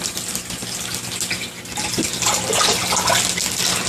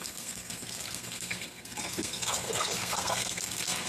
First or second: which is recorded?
first